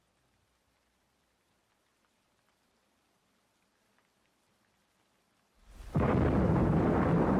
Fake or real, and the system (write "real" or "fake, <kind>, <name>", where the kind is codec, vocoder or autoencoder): fake, vocoder, BigVGAN v2